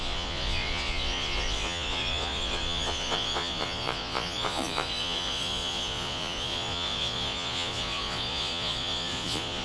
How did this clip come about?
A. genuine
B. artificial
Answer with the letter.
B